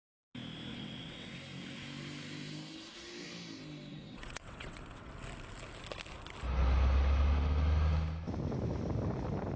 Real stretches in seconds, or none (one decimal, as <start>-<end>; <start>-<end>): 0.0-0.7; 1.3-3.9; 5.1-9.6